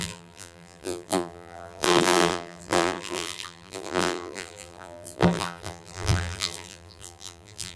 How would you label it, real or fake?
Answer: fake